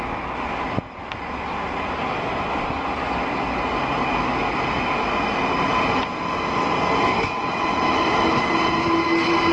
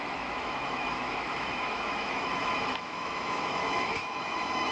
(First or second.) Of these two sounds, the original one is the first